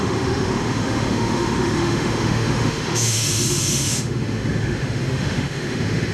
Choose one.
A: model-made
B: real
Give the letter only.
A